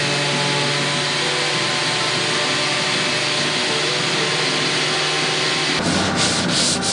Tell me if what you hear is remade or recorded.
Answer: recorded